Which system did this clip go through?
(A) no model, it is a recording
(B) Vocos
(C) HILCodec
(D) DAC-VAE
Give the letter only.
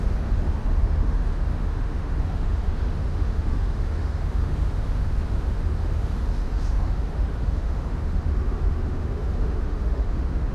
D